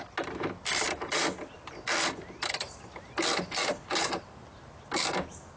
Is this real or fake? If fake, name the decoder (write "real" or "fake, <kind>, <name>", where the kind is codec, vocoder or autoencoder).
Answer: real